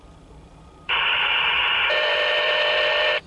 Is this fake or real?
fake